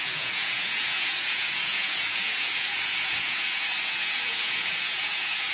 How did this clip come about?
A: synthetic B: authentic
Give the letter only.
A